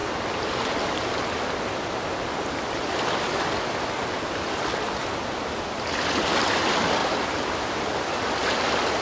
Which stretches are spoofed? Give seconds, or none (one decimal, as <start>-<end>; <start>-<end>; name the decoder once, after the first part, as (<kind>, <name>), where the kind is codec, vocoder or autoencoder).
0.0-0.6 (vocoder, BigVGAN v2); 7.0-7.8